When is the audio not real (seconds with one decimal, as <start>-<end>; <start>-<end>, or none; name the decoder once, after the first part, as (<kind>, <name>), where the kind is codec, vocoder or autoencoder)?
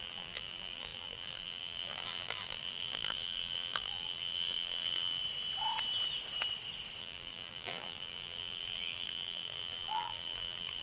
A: 0.0-5.2 (vocoder, BigVGAN v2); 7.0-10.8